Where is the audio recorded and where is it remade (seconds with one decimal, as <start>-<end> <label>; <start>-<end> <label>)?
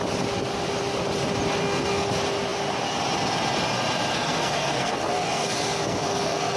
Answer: 0.0-1.6 recorded; 1.6-2.1 remade; 2.1-4.1 recorded; 4.1-6.6 remade